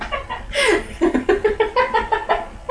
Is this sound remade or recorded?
recorded